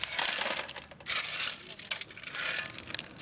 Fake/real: real